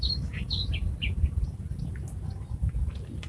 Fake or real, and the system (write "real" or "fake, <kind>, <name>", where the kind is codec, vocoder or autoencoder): real